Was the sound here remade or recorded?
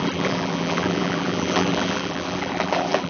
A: remade